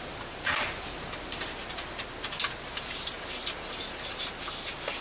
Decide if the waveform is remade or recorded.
recorded